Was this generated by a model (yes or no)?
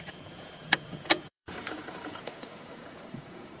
yes